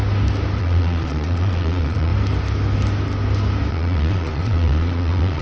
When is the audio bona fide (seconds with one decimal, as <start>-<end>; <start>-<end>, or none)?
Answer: 0.0-0.6; 2.1-3.7